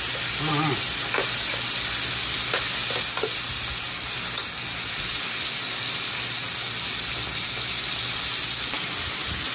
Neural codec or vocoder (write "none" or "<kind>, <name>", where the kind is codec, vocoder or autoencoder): none